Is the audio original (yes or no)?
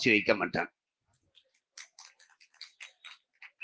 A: yes